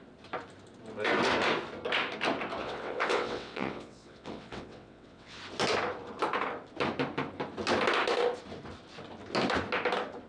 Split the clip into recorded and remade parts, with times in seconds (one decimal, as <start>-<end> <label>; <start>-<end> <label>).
0.0-2.6 recorded; 2.6-5.4 remade; 5.4-10.3 recorded

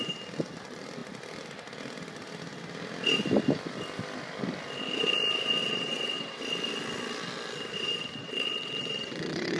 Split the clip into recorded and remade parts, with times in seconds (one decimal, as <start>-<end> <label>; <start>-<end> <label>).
0.0-5.6 recorded; 5.6-6.4 remade; 6.4-8.2 recorded; 8.2-9.6 remade

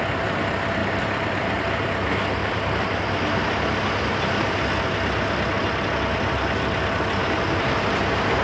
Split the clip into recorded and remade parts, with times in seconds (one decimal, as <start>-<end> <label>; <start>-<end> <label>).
0.0-0.8 recorded; 0.8-1.6 remade; 1.6-2.4 recorded; 2.4-2.9 remade; 2.9-8.4 recorded

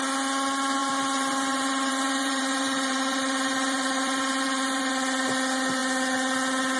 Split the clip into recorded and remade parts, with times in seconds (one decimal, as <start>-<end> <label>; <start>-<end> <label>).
0.0-0.8 recorded; 0.8-4.9 remade; 4.9-6.8 recorded

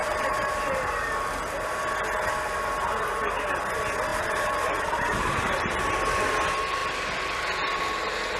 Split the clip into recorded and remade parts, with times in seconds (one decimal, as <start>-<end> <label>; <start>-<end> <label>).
0.0-0.9 remade; 0.9-4.1 recorded; 4.1-5.8 remade; 5.8-8.4 recorded

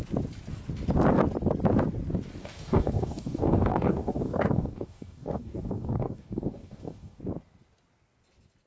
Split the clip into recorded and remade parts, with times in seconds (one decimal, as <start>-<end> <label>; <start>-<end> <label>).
0.0-2.4 recorded; 2.4-7.2 remade; 7.2-8.7 recorded

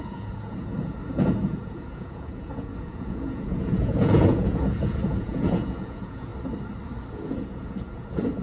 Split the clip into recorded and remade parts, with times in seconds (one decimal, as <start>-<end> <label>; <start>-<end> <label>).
0.0-6.3 remade; 6.3-7.1 recorded; 7.1-8.4 remade